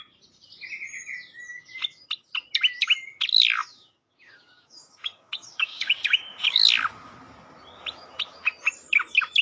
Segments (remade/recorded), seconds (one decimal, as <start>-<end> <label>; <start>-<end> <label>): 0.0-3.6 recorded; 3.6-6.6 remade; 6.6-9.4 recorded